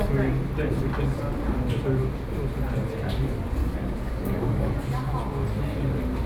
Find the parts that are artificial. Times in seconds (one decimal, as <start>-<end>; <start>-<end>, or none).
3.6-4.7

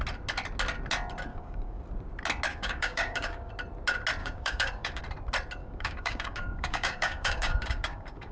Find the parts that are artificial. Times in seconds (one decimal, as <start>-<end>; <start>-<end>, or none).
1.3-1.8; 2.5-3.5; 4.2-5.0; 5.6-8.3

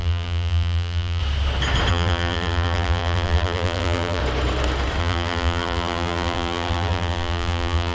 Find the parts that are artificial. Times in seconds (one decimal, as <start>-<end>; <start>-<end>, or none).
0.0-1.2; 1.9-4.2; 5.0-7.9

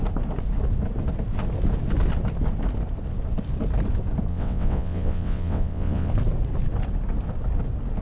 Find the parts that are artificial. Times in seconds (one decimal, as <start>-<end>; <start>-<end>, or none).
4.3-6.1

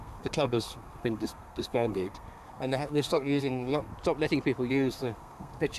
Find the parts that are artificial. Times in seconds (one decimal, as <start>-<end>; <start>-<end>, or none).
0.0-3.9; 4.7-5.8

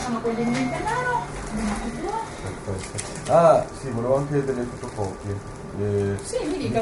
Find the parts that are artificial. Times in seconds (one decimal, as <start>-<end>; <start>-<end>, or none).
0.0-3.5; 6.3-6.8